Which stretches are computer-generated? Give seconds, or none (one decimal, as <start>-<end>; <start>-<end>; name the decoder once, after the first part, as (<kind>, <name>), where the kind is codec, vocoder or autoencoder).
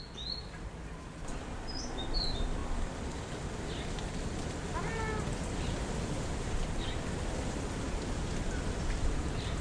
none